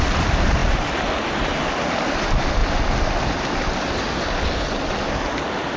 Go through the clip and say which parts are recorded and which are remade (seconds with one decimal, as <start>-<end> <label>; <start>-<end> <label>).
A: 0.0-5.8 recorded